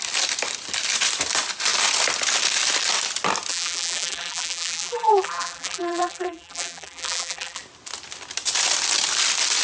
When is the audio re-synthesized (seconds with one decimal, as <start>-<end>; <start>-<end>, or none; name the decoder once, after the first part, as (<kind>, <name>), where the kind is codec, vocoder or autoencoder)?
3.5-7.6 (vocoder, BigVGAN v2)